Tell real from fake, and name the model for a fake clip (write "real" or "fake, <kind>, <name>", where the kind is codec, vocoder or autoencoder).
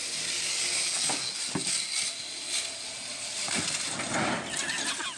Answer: real